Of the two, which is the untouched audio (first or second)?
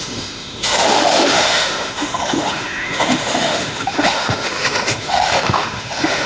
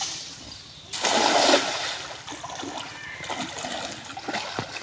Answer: second